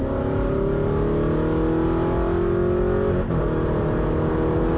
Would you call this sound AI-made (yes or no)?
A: no